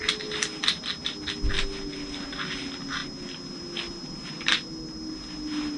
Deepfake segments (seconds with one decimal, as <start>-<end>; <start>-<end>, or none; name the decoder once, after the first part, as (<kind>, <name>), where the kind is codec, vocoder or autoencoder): none